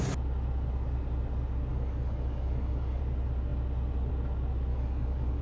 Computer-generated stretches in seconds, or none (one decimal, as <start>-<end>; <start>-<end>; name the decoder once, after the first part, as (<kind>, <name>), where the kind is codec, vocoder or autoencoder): 1.7-3.0 (codec, DAC); 4.7-5.4